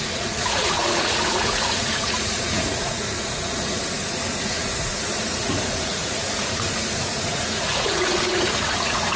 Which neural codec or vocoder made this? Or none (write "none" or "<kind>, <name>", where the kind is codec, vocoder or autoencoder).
vocoder, Vocos